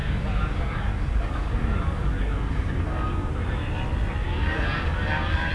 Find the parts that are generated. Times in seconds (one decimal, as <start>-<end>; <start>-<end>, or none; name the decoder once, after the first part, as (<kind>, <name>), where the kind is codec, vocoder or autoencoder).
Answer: 0.0-3.3 (codec, DAC); 4.2-5.5